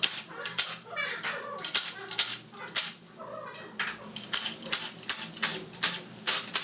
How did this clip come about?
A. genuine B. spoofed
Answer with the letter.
A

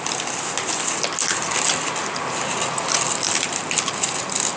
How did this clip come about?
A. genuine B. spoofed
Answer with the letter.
A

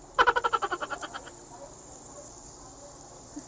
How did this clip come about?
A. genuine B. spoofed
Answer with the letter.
A